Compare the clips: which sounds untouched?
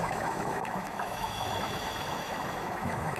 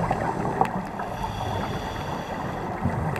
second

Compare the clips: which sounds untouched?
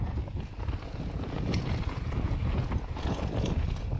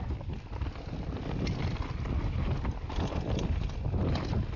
second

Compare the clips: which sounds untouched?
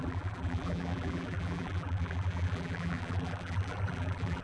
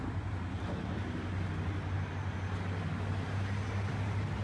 second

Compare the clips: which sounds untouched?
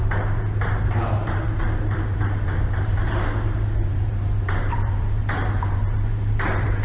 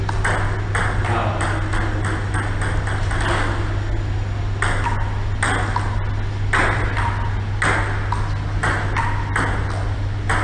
second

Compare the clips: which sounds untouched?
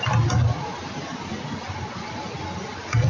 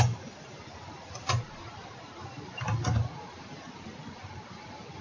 first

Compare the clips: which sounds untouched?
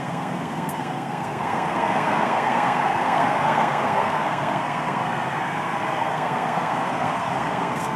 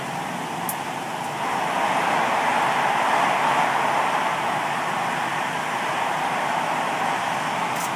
second